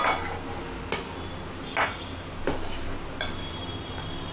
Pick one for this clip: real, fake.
real